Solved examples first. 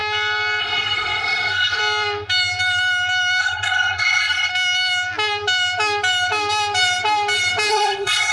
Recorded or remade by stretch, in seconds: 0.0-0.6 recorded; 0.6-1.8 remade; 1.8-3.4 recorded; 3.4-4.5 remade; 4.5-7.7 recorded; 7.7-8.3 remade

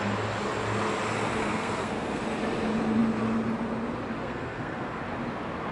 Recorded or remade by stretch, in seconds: 0.0-1.4 recorded; 1.4-2.2 remade; 2.2-4.2 recorded; 4.2-5.0 remade; 5.0-5.7 recorded